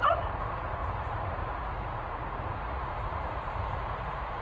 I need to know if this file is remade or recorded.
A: remade